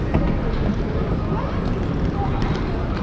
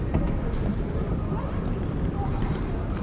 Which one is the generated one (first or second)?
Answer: second